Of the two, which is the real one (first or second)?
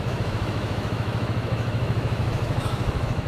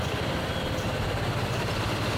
second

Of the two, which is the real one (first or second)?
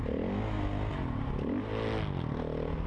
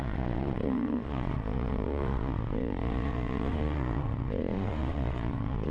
first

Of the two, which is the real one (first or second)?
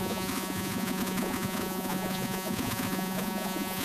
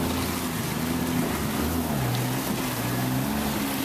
second